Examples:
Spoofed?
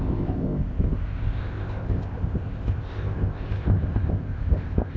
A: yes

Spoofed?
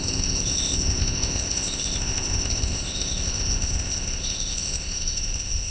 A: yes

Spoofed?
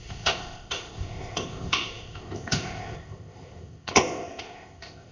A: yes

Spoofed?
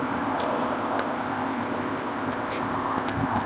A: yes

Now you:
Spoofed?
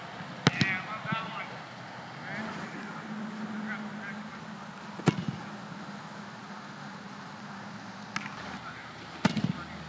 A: no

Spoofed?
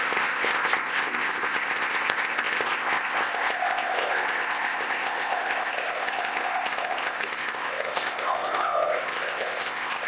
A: yes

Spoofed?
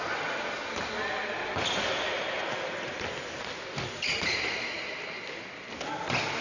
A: no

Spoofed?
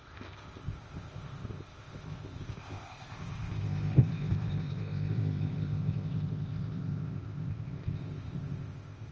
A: yes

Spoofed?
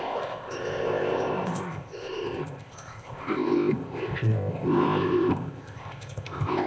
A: yes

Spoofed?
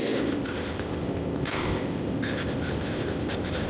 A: yes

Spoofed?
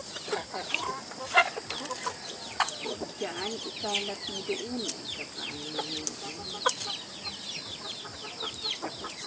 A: no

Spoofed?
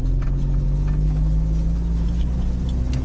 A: no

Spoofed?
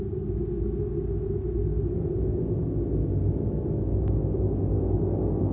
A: no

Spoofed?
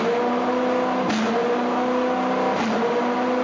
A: no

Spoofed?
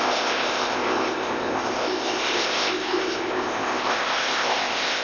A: yes